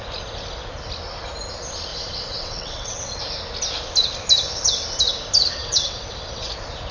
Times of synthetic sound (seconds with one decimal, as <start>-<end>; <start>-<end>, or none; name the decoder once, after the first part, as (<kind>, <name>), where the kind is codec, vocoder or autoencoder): 1.9-3.2 (vocoder, WaveNeXt); 5.6-6.5